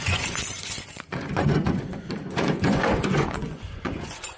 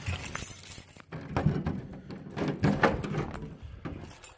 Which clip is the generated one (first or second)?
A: first